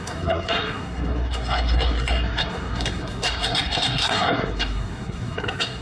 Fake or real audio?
fake